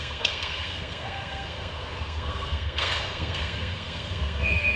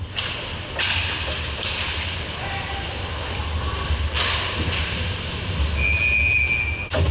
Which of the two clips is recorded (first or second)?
second